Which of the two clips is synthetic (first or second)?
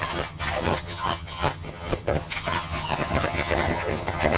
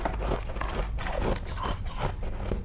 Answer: first